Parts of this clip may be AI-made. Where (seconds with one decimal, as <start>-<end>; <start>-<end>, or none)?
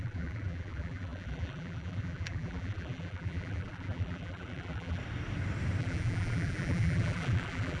0.0-5.0; 5.8-7.8